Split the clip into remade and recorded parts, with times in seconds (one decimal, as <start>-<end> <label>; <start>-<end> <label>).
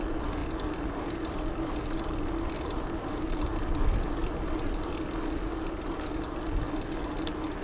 0.0-7.6 recorded